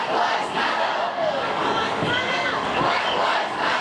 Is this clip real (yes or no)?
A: no